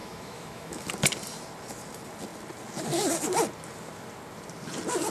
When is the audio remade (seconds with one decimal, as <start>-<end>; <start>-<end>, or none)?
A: 0.0-0.9

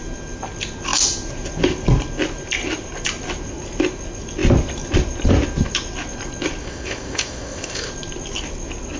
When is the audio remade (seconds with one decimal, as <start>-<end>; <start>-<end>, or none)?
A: 6.6-7.9

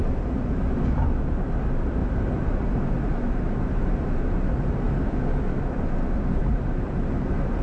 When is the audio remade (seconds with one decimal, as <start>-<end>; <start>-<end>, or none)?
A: 0.0-0.7; 2.0-5.0; 6.4-7.6